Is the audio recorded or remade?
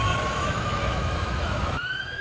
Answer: remade